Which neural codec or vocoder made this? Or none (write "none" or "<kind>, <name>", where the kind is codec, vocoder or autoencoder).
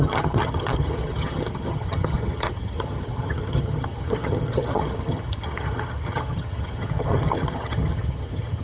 vocoder, HiFi-GAN